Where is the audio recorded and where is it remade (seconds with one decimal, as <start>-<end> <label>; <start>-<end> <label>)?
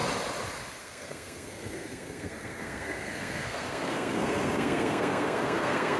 0.0-0.8 recorded; 0.8-6.0 remade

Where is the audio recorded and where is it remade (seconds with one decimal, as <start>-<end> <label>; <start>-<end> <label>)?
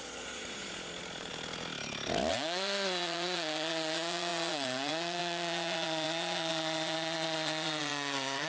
0.0-1.3 remade; 1.3-2.3 recorded; 2.3-8.5 remade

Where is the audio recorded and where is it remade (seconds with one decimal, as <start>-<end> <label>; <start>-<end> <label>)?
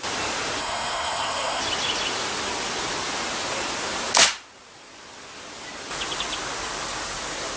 0.0-0.6 recorded; 0.6-1.6 remade; 1.6-7.6 recorded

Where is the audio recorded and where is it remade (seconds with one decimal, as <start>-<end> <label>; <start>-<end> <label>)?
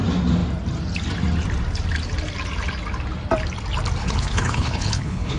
0.0-4.0 recorded; 4.0-5.4 remade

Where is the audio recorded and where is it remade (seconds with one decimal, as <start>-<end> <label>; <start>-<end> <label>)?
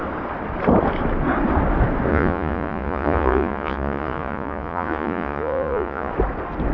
0.0-2.1 recorded; 2.1-6.1 remade; 6.1-6.7 recorded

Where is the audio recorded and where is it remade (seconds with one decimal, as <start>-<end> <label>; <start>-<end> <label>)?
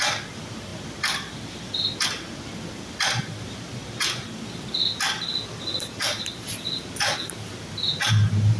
0.0-8.6 recorded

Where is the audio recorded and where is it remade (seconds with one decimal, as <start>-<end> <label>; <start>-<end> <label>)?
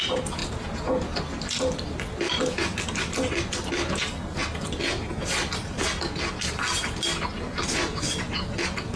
0.0-9.0 recorded